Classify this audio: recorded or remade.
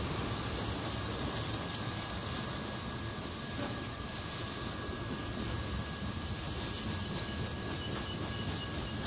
recorded